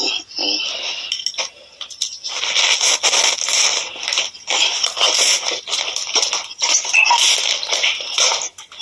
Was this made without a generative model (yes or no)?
yes